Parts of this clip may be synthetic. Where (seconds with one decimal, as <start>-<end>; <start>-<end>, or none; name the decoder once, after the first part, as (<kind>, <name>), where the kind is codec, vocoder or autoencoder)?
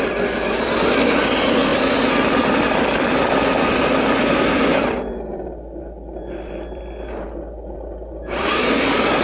none